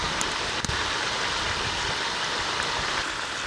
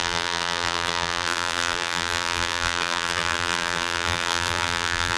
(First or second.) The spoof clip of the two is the second